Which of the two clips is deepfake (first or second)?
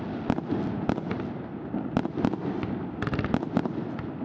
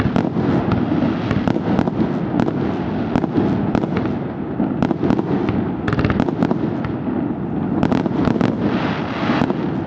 first